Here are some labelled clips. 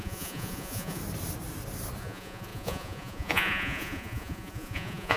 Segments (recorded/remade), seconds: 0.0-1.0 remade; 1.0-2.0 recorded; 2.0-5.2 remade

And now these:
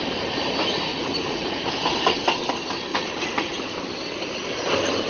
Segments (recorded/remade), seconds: 0.0-0.9 recorded; 0.9-1.7 remade; 1.7-2.9 recorded; 2.9-3.7 remade; 3.7-5.1 recorded

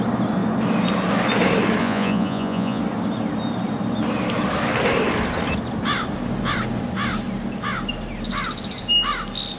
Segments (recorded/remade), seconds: 0.0-1.8 recorded; 1.8-2.8 remade; 2.8-9.6 recorded

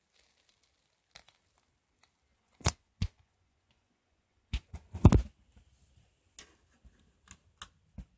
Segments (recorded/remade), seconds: 0.0-2.3 recorded; 2.3-5.1 remade; 5.1-8.2 recorded

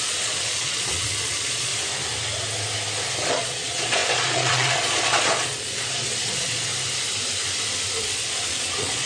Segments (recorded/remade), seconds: 0.0-1.7 remade; 1.7-3.3 recorded; 3.3-6.7 remade; 6.7-8.0 recorded; 8.0-9.1 remade